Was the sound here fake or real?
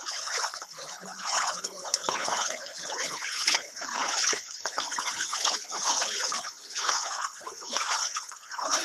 fake